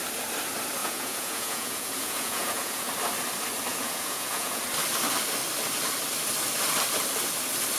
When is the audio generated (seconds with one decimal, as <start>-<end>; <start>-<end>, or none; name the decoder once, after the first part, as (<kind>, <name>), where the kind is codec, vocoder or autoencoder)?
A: 0.8-2.9 (vocoder, Vocos); 3.7-4.6